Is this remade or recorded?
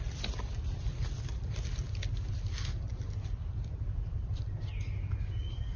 recorded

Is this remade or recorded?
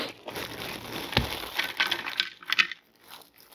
recorded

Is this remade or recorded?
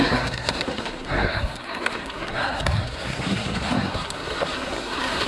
remade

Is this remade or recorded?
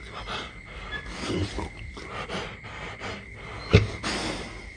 recorded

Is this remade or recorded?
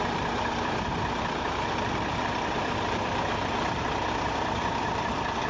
remade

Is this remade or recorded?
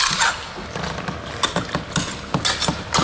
recorded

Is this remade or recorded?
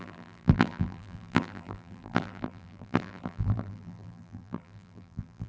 remade